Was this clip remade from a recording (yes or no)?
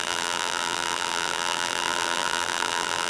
yes